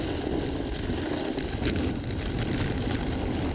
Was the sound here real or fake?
real